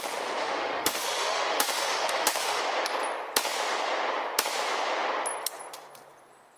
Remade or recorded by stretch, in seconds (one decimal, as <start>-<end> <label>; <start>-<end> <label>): 0.0-0.4 recorded; 0.4-2.6 remade; 2.6-6.6 recorded